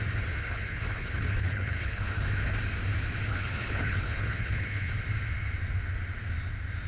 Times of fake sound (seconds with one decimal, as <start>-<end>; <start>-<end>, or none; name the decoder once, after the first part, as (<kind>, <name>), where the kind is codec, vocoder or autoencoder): 0.4-2.3 (codec, HILCodec); 3.3-4.9